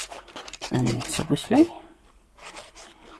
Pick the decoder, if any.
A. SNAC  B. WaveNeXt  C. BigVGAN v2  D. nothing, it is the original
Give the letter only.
A